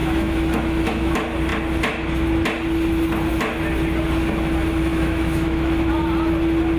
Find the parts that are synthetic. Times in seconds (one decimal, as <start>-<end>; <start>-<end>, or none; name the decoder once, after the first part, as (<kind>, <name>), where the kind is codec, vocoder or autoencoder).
0.0-1.1 (autoencoder, DAC-VAE); 4.9-5.9